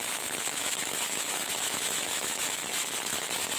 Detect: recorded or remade remade